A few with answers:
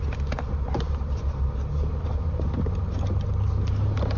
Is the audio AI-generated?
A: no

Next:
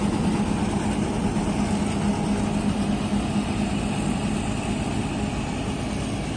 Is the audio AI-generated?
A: no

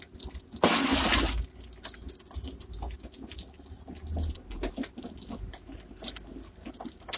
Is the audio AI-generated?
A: no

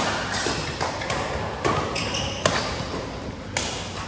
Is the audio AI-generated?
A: no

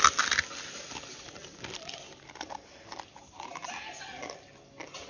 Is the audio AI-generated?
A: no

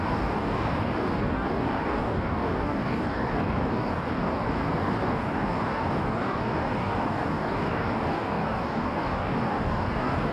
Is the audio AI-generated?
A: yes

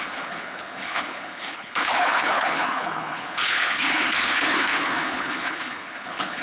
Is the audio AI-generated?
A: yes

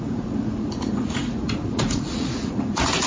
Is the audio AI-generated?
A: yes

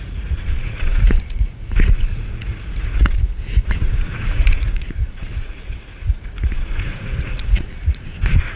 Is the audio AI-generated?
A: yes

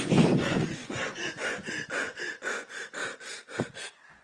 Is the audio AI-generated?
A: yes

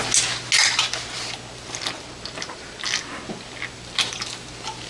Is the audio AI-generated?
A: no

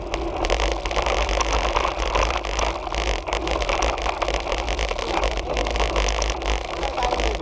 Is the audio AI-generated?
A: no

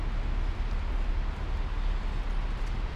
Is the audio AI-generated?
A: no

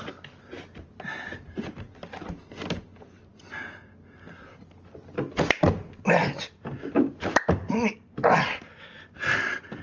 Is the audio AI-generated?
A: no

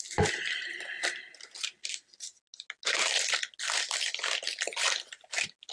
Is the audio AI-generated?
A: no